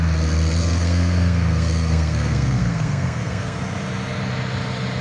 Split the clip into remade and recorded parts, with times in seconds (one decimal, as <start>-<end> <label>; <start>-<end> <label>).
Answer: 0.0-0.6 recorded; 0.6-3.6 remade; 3.6-5.0 recorded